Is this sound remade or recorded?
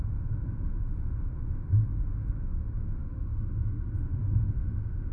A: remade